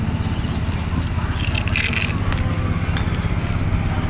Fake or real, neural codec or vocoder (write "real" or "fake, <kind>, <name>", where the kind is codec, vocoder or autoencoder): real